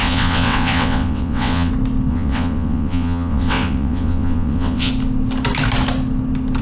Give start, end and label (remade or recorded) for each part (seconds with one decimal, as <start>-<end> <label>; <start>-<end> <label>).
0.0-1.7 remade; 1.7-2.1 recorded; 2.1-4.9 remade; 4.9-6.6 recorded